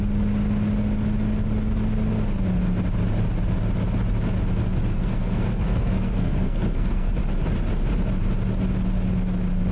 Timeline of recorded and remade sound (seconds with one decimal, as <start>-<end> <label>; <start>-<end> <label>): 0.0-4.9 recorded; 4.9-7.1 remade; 7.1-9.7 recorded